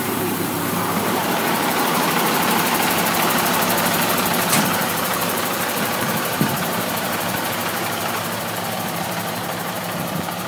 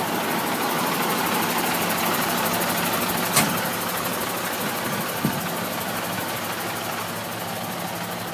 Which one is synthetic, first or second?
first